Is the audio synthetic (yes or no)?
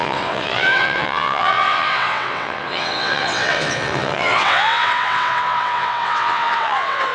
yes